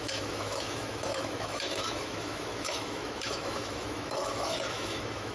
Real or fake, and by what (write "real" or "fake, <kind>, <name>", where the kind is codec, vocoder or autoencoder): fake, autoencoder, DAC-VAE